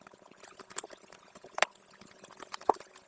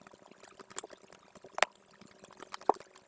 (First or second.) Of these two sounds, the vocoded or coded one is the first